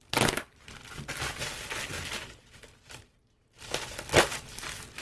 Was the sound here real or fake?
real